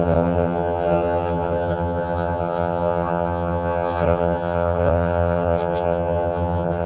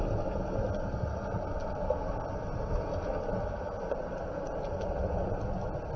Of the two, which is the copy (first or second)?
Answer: first